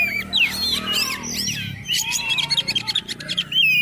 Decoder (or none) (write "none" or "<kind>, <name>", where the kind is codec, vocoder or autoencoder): none